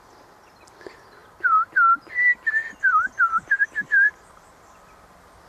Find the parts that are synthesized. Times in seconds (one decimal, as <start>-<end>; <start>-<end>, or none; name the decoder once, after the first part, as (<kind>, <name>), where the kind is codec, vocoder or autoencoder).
1.2-2.5 (vocoder, BigVGAN v2); 2.9-5.5